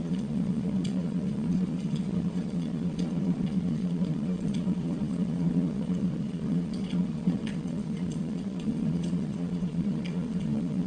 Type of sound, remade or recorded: remade